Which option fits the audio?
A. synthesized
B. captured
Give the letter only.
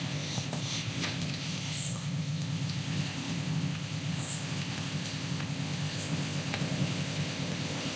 A